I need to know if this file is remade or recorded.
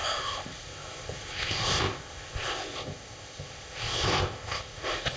remade